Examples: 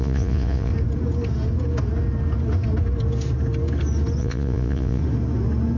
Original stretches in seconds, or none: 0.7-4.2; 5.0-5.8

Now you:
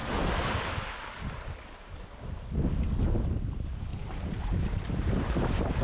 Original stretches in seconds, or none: 0.0-3.9; 5.1-5.8

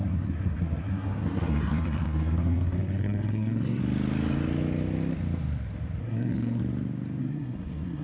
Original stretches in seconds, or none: 3.8-6.0; 6.6-7.2

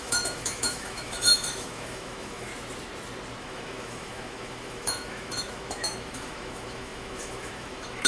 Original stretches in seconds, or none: 2.5-3.4

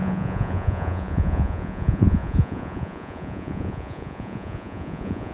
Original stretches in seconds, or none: none